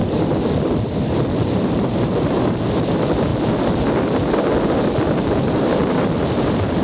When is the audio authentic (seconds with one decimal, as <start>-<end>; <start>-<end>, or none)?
0.0-6.8